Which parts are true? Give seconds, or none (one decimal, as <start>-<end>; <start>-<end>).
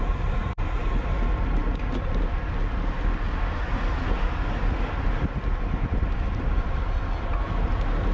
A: 0.0-8.1